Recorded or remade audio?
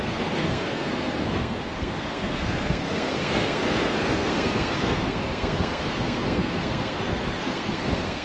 remade